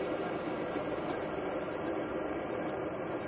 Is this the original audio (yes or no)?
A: no